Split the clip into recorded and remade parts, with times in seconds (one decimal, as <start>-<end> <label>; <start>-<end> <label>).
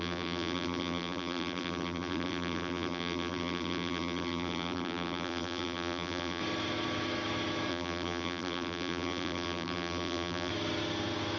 0.0-6.4 remade; 6.4-7.7 recorded; 7.7-10.5 remade; 10.5-11.4 recorded